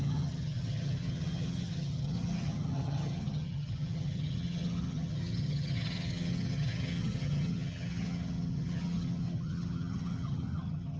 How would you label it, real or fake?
fake